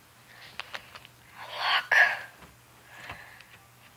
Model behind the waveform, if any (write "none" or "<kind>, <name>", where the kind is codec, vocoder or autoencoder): none